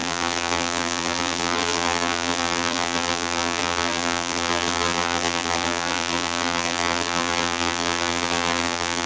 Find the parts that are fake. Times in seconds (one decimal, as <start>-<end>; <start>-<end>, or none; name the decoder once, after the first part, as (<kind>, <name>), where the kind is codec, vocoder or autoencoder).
0.0-9.1 (vocoder, BigVGAN v2)